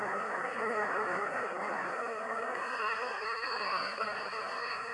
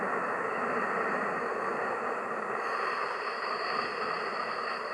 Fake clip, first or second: first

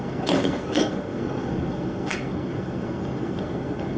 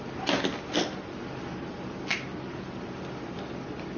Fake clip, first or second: first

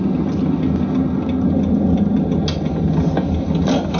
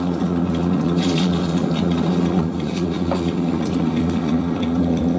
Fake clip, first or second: second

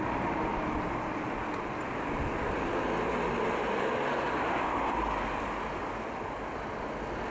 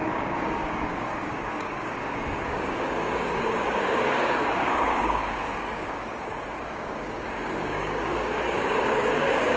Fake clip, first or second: second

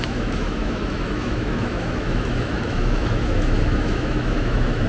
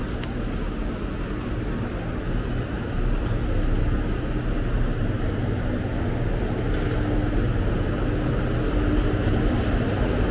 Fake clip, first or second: first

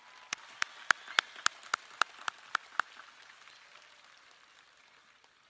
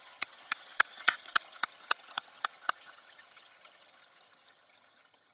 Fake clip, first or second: second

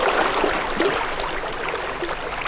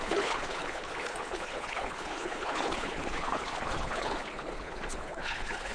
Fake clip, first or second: second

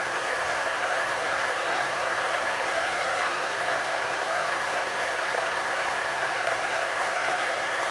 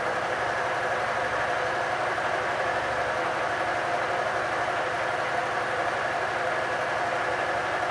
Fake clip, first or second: first